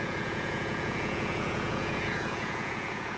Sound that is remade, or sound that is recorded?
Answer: remade